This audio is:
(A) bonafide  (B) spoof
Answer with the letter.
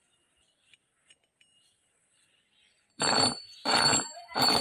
B